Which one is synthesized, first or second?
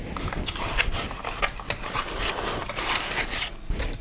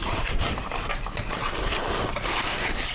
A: second